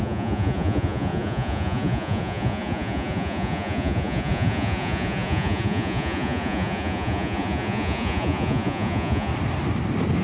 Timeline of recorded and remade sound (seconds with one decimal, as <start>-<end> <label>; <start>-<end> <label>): 0.0-9.3 remade; 9.3-10.2 recorded